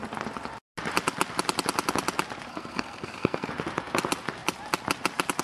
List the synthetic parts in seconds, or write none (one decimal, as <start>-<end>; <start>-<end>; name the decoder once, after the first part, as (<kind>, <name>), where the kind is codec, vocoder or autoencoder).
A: 2.5-3.5 (codec, SNAC)

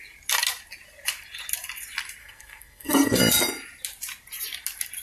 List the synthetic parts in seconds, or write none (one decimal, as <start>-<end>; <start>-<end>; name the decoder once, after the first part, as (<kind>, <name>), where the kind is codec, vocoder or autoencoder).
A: 2.2-3.2 (codec, SNAC)